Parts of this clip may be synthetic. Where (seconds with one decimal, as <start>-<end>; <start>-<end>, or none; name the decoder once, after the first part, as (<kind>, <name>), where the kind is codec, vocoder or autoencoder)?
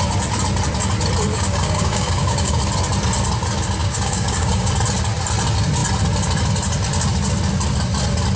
1.3-2.6 (codec, DAC); 3.8-4.7